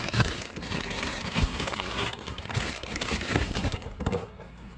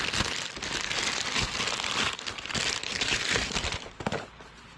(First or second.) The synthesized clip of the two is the first